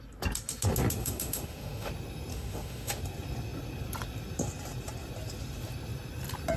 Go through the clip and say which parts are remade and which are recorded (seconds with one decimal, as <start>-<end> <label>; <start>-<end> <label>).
0.0-1.0 recorded; 1.0-1.9 remade; 1.9-2.3 recorded; 2.3-3.0 remade; 3.0-6.6 recorded